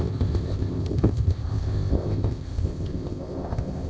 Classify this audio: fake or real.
fake